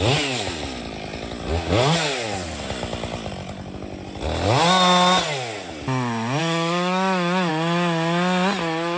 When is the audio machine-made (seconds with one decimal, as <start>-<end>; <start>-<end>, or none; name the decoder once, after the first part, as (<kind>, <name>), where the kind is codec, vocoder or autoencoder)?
6.4-7.5 (autoencoder, DAC-VAE)